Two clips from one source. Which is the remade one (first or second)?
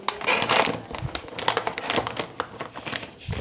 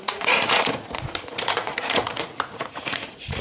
second